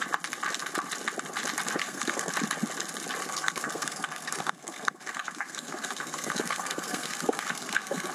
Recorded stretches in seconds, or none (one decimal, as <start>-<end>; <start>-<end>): 0.0-1.8; 2.3-3.2